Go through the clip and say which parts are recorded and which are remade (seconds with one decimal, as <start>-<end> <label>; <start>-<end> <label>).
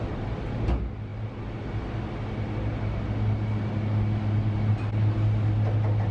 0.0-6.1 recorded